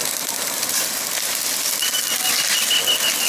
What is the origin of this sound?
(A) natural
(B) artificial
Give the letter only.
A